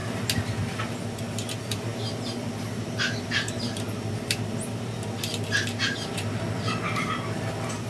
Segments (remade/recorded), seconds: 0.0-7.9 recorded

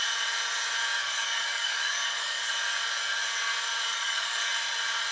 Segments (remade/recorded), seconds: 0.0-1.0 recorded; 1.0-2.4 remade; 2.4-3.9 recorded; 3.9-4.5 remade; 4.5-5.1 recorded

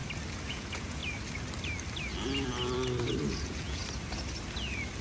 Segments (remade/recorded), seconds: 0.0-0.5 recorded; 0.5-1.0 remade; 1.0-3.3 recorded; 3.3-3.8 remade; 3.8-5.0 recorded